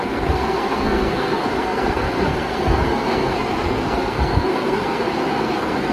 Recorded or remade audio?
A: remade